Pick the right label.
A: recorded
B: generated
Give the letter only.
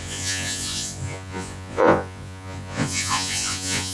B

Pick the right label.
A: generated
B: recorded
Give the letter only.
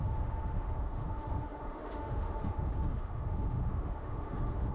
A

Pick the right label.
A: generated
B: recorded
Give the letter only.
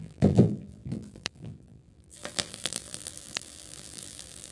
A